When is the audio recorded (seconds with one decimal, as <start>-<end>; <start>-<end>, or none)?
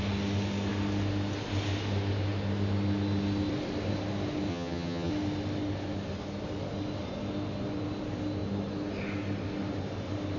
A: 0.0-4.5; 5.1-10.4